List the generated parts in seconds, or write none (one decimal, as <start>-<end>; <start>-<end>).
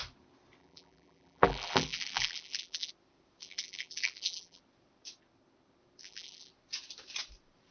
0.6-2.9; 3.4-4.6; 6.0-6.5